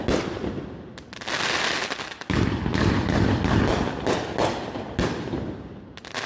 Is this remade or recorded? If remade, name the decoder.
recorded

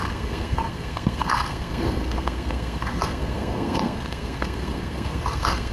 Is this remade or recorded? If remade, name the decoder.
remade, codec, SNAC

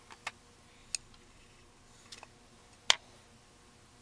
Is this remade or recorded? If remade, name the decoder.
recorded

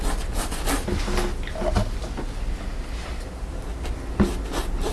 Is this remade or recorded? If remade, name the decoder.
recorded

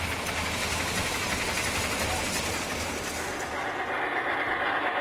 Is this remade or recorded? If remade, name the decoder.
recorded